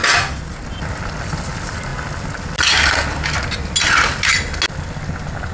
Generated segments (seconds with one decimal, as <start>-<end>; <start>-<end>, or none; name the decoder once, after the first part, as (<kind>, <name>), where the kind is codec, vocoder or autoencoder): none